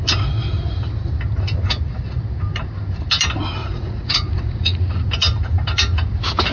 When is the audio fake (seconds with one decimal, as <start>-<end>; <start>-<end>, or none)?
3.6-5.1